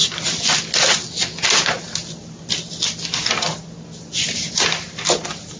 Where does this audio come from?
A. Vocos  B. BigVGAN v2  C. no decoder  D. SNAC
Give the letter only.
C